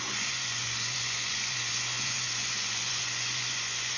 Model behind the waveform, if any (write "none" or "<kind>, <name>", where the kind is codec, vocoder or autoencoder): vocoder, Vocos